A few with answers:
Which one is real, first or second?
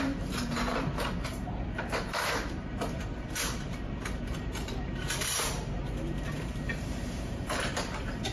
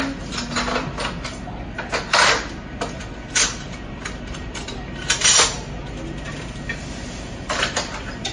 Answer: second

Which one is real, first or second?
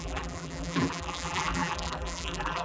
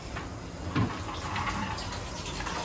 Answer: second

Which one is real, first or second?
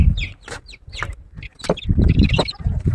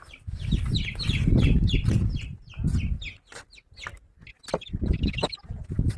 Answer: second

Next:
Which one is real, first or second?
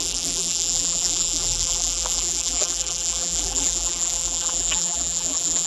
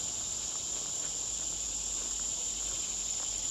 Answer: second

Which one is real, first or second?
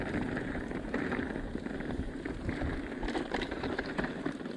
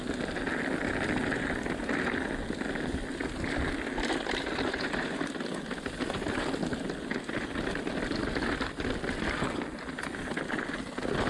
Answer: second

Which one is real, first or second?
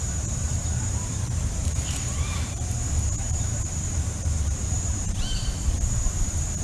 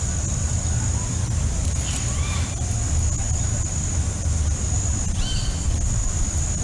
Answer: second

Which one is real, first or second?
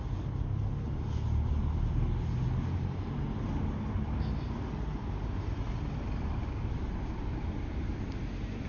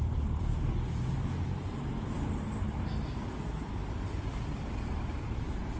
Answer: first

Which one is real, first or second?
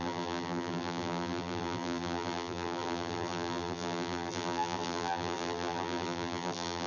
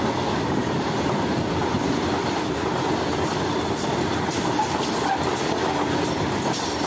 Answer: second